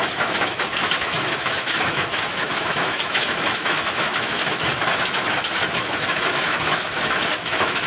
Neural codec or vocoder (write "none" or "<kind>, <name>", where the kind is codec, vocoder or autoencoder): autoencoder, DAC-VAE